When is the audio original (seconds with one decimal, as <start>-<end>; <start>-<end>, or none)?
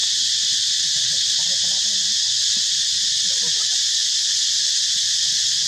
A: 0.0-5.7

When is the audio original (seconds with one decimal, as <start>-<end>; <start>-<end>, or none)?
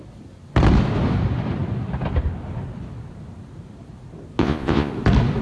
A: 0.0-4.4; 4.9-5.4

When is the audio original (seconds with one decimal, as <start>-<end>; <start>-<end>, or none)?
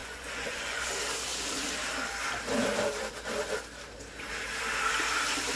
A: 0.9-5.6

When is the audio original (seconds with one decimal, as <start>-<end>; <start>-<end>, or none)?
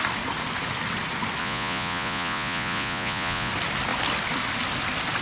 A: 0.0-1.4; 3.5-5.2